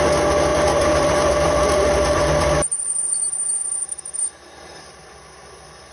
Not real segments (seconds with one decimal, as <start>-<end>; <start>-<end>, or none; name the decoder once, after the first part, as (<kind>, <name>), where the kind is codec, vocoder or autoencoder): 0.5-3.2 (vocoder, BigVGAN v2); 3.6-5.1